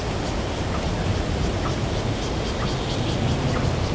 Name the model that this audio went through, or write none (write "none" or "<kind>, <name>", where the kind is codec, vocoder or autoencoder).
none